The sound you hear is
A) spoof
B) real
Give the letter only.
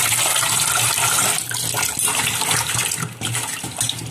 B